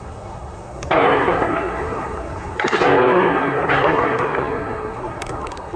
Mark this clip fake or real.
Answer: fake